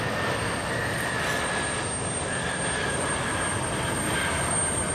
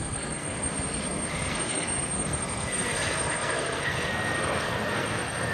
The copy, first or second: second